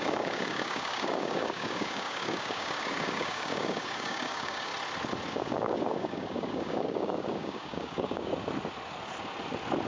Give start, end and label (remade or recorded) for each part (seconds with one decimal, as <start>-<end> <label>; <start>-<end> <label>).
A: 0.0-4.7 remade; 4.7-5.3 recorded; 5.3-8.3 remade; 8.3-9.9 recorded

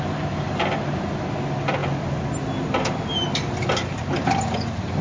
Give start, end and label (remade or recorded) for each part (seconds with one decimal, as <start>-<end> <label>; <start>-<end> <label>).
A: 0.0-5.0 recorded